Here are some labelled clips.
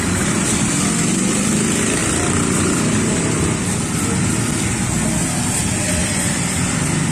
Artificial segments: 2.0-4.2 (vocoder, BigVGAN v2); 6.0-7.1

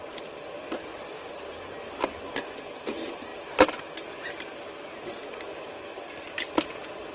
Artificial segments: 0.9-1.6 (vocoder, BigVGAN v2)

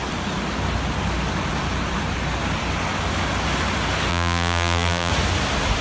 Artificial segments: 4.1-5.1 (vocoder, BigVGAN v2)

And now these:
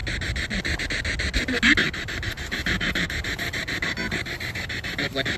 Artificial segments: 1.8-5.0 (vocoder, BigVGAN v2)

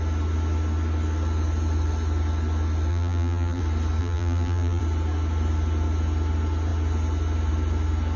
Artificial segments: 2.9-3.6 (vocoder, BigVGAN v2); 4.0-4.8

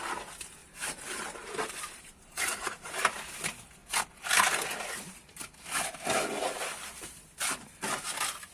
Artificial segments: 0.6-3.2 (vocoder, BigVGAN v2)

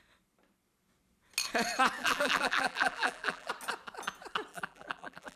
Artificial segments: 2.0-3.5 (vocoder, BigVGAN v2); 4.5-5.4

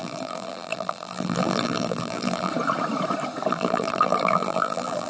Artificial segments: 0.0-2.5 (vocoder, BigVGAN v2); 3.5-5.1